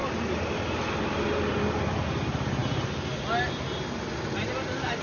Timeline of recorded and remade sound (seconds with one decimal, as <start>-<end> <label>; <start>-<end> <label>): 0.0-5.0 recorded